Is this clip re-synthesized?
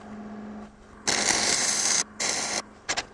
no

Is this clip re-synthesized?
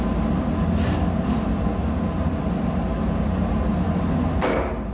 no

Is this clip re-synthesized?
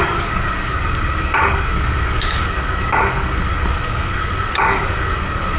yes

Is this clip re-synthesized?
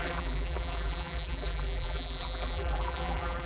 yes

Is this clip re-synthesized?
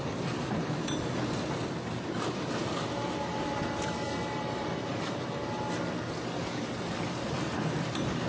yes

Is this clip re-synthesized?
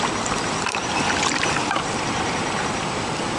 yes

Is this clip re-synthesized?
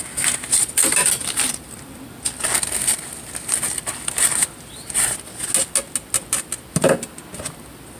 no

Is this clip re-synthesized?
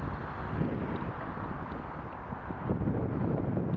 no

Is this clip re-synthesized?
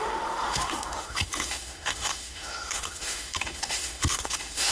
yes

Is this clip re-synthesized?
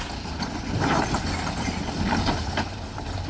no